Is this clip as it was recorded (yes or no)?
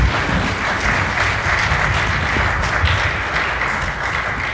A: yes